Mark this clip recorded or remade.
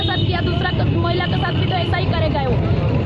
recorded